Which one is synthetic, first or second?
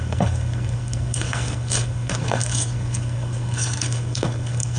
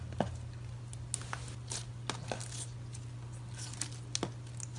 first